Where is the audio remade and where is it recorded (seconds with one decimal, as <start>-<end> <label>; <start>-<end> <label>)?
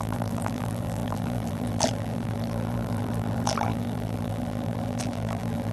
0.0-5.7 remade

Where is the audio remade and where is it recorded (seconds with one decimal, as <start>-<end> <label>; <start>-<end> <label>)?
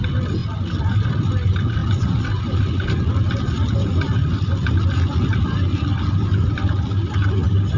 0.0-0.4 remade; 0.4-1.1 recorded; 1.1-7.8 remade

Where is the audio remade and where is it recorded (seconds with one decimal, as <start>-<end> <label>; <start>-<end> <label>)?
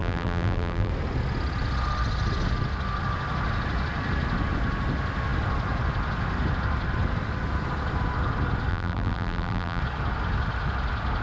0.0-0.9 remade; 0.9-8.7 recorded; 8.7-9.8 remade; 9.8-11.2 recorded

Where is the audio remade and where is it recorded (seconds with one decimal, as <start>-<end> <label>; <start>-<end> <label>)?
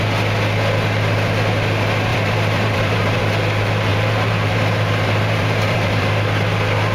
0.0-2.1 recorded; 2.1-3.2 remade; 3.2-3.9 recorded; 3.9-6.1 remade; 6.1-6.9 recorded